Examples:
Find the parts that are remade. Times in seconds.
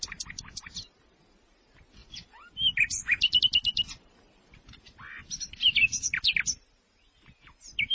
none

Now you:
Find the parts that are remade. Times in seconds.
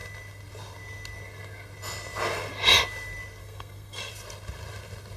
3.4-4.1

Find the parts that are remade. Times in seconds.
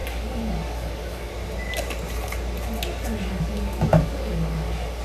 0.0-1.3; 3.1-5.0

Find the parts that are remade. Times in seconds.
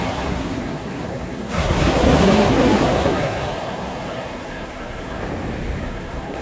0.0-5.2; 5.8-6.4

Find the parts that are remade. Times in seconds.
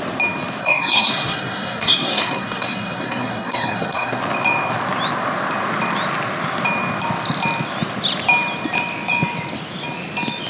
0.6-4.2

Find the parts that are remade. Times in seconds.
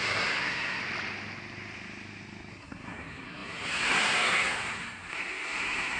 0.0-0.8; 2.5-6.0